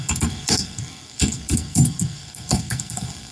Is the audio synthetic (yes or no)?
yes